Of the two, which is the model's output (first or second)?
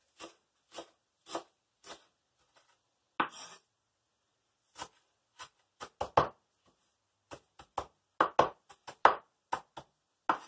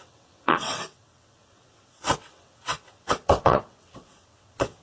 second